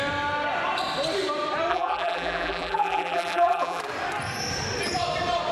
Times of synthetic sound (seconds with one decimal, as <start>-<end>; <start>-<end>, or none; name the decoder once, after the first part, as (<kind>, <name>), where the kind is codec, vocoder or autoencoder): 1.7-3.8 (vocoder, BigVGAN v2)